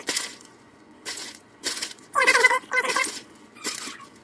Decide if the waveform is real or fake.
fake